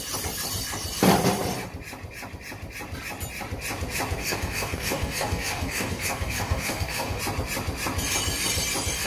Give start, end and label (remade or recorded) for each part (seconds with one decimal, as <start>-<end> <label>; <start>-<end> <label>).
0.0-4.2 recorded; 4.2-7.2 remade; 7.2-9.1 recorded